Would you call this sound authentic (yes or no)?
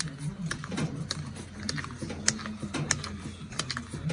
yes